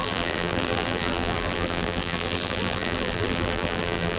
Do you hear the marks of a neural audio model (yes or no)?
yes